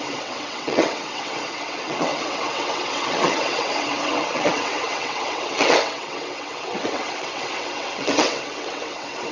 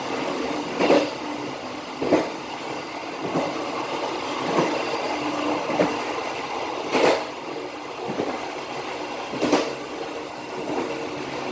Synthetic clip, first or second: first